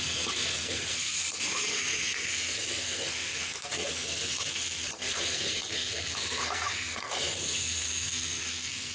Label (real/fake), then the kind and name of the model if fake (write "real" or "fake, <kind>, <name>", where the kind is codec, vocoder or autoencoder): fake, codec, SNAC